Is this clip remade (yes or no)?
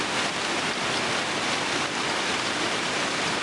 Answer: no